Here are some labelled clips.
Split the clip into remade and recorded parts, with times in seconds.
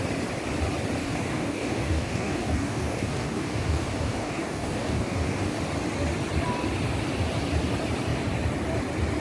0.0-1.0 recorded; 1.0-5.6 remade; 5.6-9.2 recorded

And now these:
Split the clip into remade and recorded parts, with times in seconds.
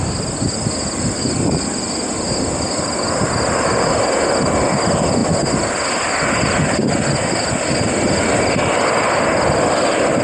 0.0-10.2 recorded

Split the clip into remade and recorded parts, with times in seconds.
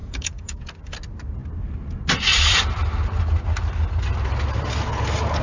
0.0-0.7 remade; 0.7-5.4 recorded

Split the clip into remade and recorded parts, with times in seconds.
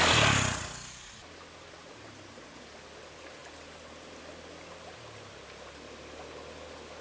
0.0-7.0 recorded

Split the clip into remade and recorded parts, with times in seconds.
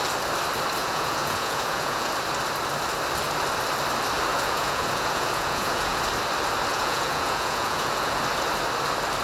0.0-0.8 recorded; 0.8-2.1 remade; 2.1-4.3 recorded; 4.3-6.0 remade; 6.0-6.7 recorded; 6.7-8.2 remade; 8.2-9.2 recorded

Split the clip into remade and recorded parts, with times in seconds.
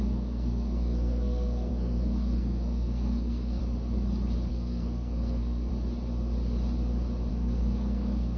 0.0-3.6 remade; 3.6-4.5 recorded; 4.5-5.7 remade; 5.7-7.3 recorded; 7.3-8.4 remade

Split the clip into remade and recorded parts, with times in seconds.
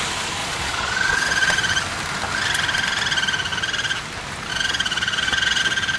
0.0-0.4 recorded; 0.4-1.7 remade; 1.7-4.5 recorded; 4.5-5.6 remade; 5.6-6.0 recorded